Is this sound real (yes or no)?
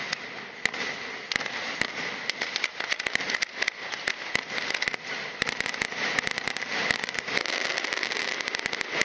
yes